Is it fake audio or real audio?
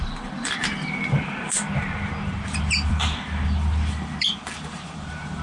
fake